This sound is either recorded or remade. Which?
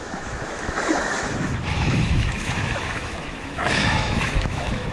remade